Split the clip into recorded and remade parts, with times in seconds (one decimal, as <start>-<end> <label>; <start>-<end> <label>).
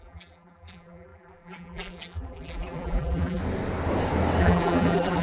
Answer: 0.0-3.4 remade; 3.4-4.4 recorded; 4.4-5.2 remade